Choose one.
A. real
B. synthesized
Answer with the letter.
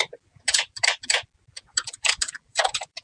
B